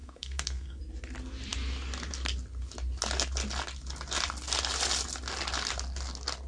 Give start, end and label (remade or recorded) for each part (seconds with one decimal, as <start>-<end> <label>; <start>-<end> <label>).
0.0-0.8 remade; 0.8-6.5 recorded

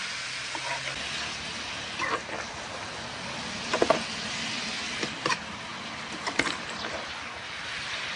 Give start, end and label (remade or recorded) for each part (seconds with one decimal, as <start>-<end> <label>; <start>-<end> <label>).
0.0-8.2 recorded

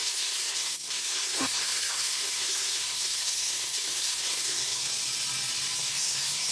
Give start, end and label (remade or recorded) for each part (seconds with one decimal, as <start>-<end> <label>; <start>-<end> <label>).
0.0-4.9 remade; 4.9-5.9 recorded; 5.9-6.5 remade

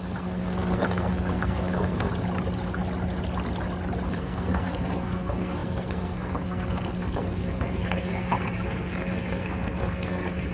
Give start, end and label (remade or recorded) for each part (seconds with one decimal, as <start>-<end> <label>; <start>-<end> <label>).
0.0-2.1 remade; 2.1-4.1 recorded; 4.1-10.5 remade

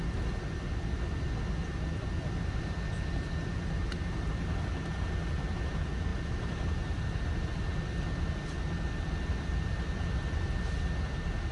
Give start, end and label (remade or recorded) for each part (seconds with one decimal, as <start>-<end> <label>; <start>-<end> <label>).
0.0-11.5 recorded

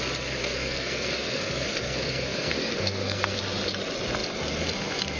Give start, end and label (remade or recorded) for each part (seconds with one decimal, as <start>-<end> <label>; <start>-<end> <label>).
0.0-0.4 recorded; 0.4-3.4 remade; 3.4-5.2 recorded

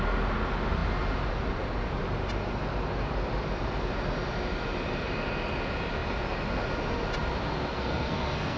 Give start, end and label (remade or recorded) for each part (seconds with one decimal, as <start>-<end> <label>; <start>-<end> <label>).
0.0-7.7 recorded; 7.7-8.6 remade